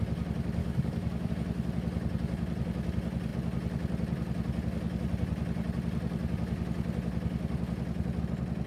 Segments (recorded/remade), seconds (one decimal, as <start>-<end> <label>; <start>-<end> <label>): 0.0-0.6 recorded; 0.6-1.3 remade; 1.3-8.7 recorded